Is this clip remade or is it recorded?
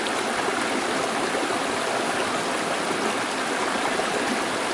recorded